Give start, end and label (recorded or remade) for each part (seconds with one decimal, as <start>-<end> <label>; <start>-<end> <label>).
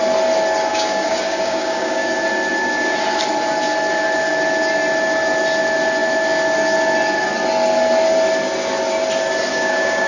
0.0-0.7 recorded; 0.7-2.1 remade; 2.1-9.5 recorded; 9.5-10.1 remade